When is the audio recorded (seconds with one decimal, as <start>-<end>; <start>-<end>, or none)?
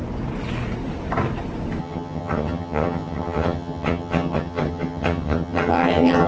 0.0-1.8